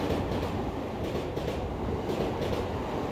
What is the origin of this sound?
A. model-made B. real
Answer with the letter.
B